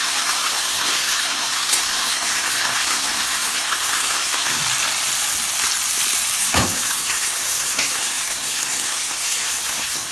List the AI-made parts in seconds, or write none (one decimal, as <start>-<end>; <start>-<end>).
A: 0.0-4.6; 6.4-10.1